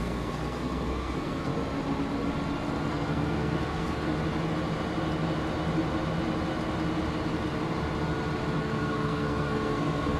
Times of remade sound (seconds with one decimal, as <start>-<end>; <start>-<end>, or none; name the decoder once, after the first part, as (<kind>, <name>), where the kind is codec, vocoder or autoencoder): 0.0-1.5 (codec, SNAC); 2.9-4.1; 8.6-10.2